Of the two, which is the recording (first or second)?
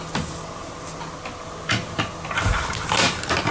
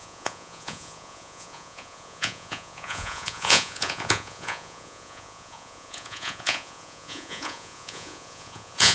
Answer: first